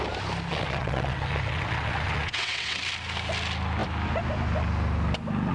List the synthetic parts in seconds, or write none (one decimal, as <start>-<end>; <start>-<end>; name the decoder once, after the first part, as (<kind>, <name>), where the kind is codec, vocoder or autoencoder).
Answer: 0.5-2.8 (vocoder, WaveNeXt)